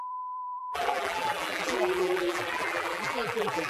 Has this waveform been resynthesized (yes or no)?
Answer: yes